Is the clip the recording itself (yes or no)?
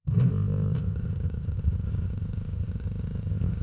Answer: no